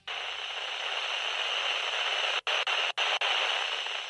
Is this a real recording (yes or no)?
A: yes